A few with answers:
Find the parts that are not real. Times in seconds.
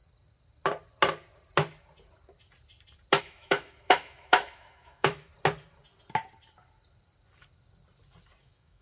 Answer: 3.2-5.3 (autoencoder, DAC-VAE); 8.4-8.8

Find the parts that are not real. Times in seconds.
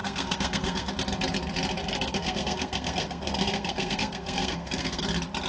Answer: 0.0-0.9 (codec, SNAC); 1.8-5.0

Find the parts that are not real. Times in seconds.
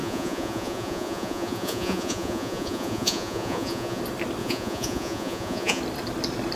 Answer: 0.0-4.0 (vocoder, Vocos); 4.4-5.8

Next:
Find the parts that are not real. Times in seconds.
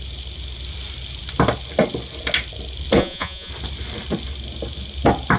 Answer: 3.0-3.5 (vocoder, Vocos)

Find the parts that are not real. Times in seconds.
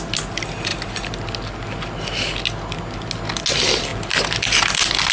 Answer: none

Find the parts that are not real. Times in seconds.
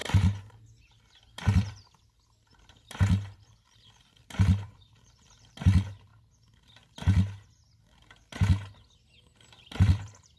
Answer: 0.0-6.1 (vocoder, BigVGAN v2); 9.6-10.4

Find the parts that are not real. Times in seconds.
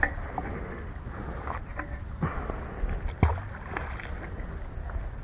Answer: none